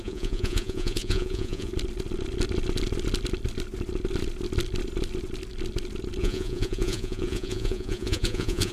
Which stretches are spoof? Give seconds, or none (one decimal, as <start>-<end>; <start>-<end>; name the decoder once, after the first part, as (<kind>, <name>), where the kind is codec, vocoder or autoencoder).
0.0-1.7 (vocoder, Vocos); 6.2-8.7